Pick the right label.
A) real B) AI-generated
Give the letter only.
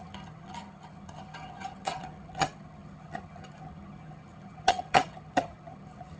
B